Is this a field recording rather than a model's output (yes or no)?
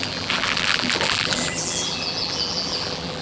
no